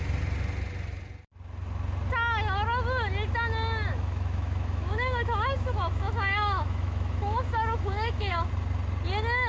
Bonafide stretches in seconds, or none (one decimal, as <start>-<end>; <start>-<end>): 0.0-3.9; 8.5-9.5